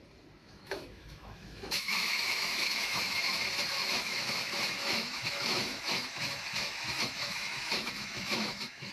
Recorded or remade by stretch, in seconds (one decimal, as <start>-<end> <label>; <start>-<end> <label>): 0.0-0.4 recorded; 0.4-3.4 remade; 3.4-3.8 recorded; 3.8-8.9 remade